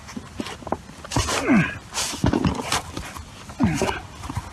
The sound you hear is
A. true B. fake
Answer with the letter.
A